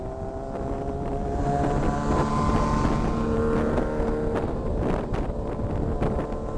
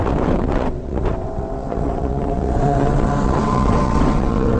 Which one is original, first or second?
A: first